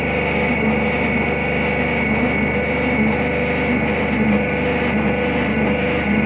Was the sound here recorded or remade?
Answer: recorded